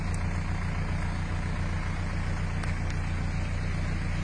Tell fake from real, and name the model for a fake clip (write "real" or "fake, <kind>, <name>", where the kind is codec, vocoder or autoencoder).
real